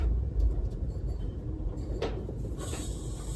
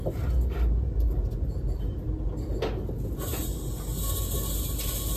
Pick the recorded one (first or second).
second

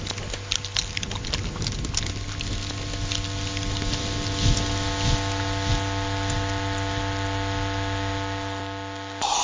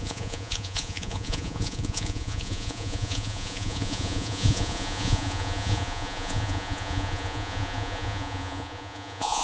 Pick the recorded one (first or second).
first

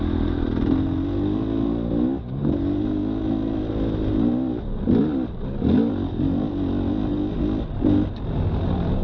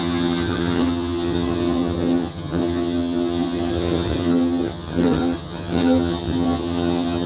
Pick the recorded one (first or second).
first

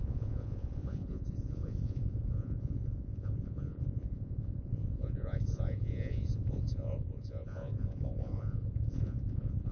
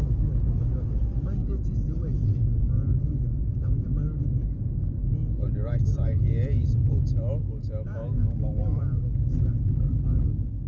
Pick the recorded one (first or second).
second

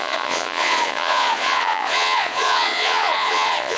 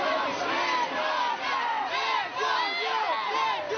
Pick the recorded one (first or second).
second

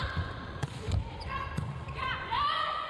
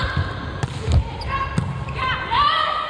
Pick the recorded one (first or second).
second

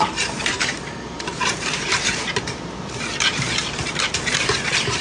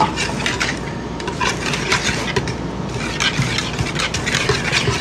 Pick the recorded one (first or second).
second